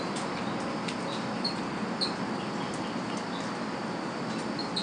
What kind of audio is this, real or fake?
real